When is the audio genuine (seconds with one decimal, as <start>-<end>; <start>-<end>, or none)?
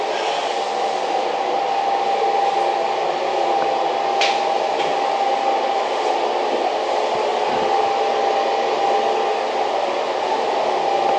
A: 0.0-11.2